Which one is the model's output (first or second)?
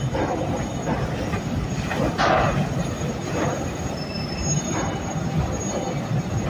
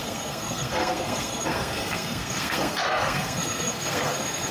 second